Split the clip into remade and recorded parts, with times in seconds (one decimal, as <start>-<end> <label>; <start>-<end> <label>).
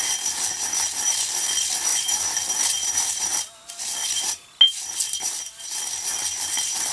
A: 0.0-6.9 recorded